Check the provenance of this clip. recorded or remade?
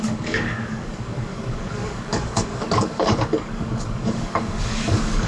remade